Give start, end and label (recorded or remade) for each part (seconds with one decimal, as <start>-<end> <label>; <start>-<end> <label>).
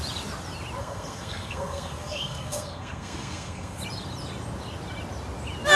0.0-0.8 recorded; 0.8-3.8 remade; 3.8-5.8 recorded